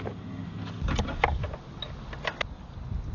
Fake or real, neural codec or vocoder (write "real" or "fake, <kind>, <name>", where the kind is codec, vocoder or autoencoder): real